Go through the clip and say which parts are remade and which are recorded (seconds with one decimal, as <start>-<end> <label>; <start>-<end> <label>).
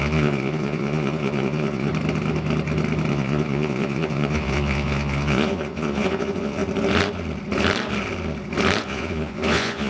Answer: 0.0-1.9 remade; 1.9-3.1 recorded; 3.1-6.6 remade; 6.6-8.8 recorded; 8.8-9.9 remade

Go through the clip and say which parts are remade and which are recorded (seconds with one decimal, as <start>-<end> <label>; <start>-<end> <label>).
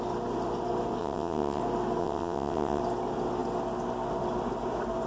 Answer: 0.0-1.0 recorded; 1.0-1.6 remade; 1.6-2.0 recorded; 2.0-2.8 remade; 2.8-5.1 recorded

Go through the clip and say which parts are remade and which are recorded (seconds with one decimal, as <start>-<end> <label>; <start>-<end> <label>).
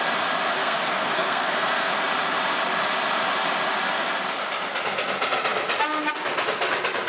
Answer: 0.0-0.6 recorded; 0.6-1.9 remade; 1.9-7.1 recorded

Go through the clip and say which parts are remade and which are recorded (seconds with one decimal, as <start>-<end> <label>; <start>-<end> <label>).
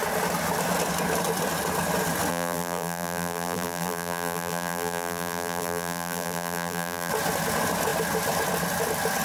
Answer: 0.0-2.3 recorded; 2.3-7.1 remade; 7.1-9.2 recorded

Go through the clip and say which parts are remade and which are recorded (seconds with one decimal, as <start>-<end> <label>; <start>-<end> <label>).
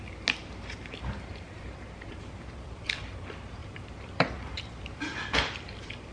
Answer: 0.0-0.4 recorded; 0.4-2.8 remade; 2.8-3.6 recorded; 3.6-4.7 remade; 4.7-6.1 recorded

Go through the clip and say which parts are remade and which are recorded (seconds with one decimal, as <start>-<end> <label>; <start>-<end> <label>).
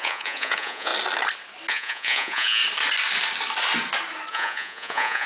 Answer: 0.0-0.9 remade; 0.9-1.7 recorded; 1.7-2.6 remade; 2.6-4.3 recorded; 4.3-5.3 remade